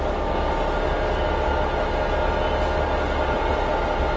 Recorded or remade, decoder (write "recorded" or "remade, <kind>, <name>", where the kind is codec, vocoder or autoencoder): recorded